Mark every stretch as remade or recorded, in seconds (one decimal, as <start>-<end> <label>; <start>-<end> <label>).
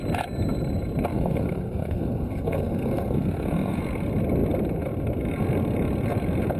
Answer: 0.0-1.1 recorded; 1.1-3.8 remade; 3.8-6.6 recorded